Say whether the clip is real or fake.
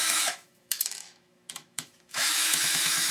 fake